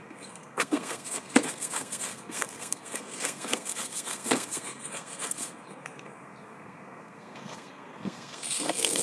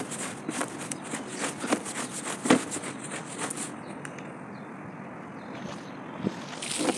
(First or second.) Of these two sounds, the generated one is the first